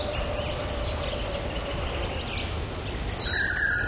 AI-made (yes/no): no